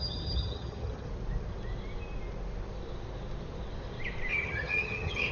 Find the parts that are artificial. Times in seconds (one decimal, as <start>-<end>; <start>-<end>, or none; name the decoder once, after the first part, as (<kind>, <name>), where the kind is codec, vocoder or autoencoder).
0.0-1.1 (vocoder, HiFi-GAN); 4.3-5.3